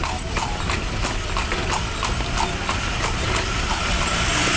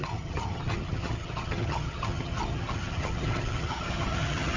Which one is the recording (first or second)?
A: first